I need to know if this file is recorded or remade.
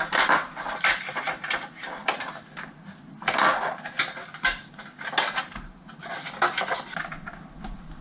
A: recorded